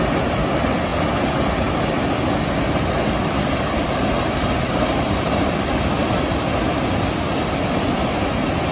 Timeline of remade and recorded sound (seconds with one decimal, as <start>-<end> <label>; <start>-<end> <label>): 0.0-8.7 recorded